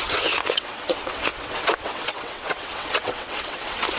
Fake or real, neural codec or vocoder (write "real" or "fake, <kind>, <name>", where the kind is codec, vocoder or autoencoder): fake, vocoder, WaveNeXt